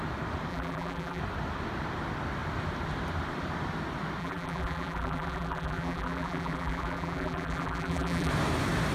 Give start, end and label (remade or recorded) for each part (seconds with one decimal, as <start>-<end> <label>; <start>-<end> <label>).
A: 0.0-0.5 recorded; 0.5-1.2 remade; 1.2-4.2 recorded; 4.2-8.3 remade; 8.3-8.9 recorded